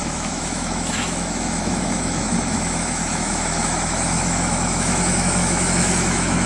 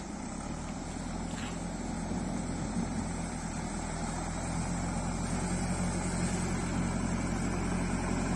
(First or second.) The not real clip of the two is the first